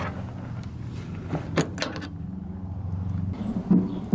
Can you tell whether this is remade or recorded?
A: recorded